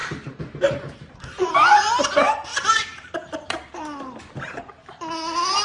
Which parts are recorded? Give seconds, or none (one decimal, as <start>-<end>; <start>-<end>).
1.5-2.5; 3.8-5.6